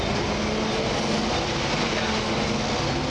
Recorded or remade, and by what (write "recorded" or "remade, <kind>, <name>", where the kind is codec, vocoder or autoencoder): recorded